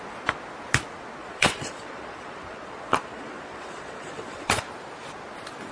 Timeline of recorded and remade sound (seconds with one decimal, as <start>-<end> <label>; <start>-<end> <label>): 0.0-1.2 recorded; 1.2-4.6 remade; 4.6-5.7 recorded